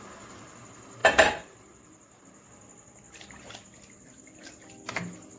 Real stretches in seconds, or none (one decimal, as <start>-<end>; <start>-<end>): 0.0-5.4